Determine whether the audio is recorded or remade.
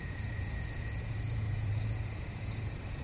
remade